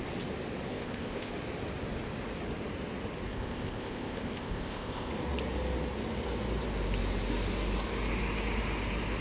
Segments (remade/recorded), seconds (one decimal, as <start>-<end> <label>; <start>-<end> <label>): 0.0-0.7 recorded; 0.7-1.3 remade; 1.3-3.3 recorded; 3.3-5.1 remade; 5.1-9.2 recorded